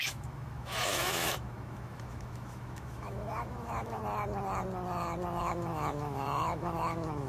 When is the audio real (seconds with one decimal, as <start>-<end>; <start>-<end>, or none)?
4.0-5.4